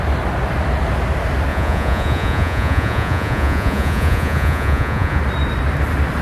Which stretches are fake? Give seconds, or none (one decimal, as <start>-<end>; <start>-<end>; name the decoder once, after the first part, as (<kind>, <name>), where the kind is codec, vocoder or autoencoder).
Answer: 1.5-5.2 (vocoder, Vocos)